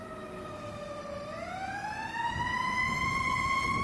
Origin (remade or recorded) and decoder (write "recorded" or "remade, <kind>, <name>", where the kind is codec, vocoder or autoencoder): recorded